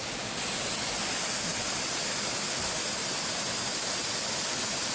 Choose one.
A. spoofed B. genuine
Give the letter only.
B